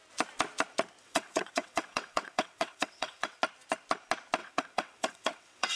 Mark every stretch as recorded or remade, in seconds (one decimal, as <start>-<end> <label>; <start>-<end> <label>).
0.0-1.0 recorded; 1.0-3.4 remade; 3.4-4.4 recorded; 4.4-5.8 remade